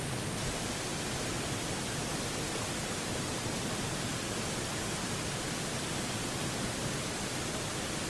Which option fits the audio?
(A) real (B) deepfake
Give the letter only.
A